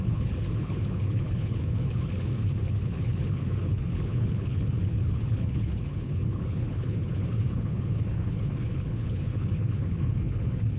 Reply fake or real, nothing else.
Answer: fake